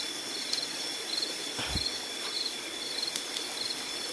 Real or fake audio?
real